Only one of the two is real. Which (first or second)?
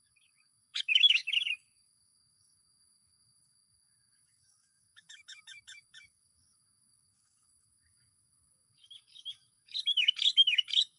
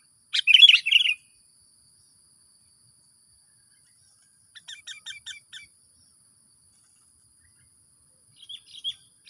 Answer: second